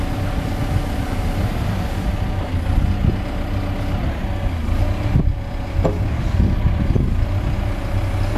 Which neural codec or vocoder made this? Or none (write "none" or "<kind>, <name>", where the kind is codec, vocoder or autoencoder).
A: none